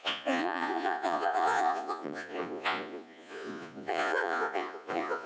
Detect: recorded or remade remade